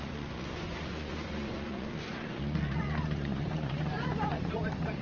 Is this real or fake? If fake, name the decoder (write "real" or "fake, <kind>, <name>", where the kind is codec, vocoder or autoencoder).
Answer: fake, vocoder, Vocos